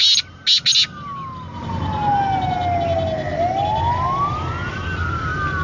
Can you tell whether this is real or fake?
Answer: real